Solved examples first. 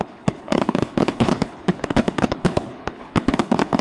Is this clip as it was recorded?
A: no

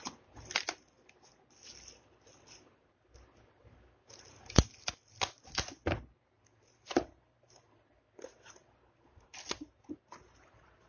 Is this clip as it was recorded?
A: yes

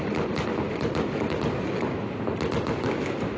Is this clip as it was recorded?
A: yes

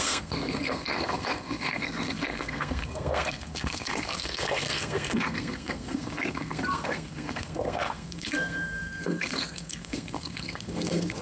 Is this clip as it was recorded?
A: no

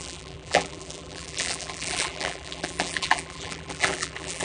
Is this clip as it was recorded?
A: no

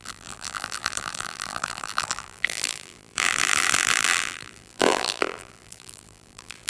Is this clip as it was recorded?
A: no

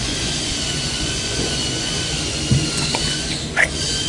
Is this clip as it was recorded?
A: no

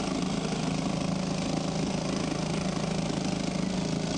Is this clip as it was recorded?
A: yes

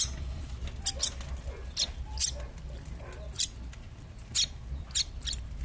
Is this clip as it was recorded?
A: yes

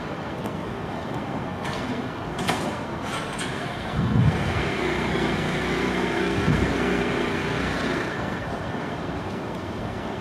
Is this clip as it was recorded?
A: no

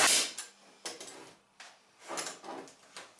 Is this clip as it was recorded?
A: yes